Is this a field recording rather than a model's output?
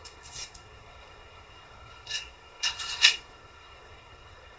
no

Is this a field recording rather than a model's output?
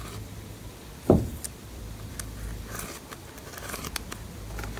yes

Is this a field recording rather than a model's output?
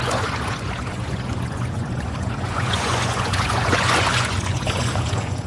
no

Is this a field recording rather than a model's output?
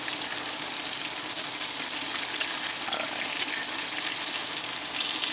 yes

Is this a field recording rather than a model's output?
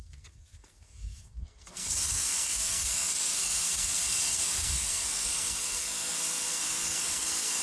no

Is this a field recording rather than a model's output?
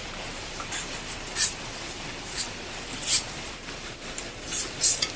no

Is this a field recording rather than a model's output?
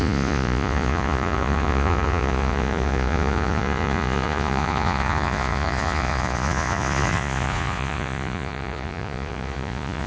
no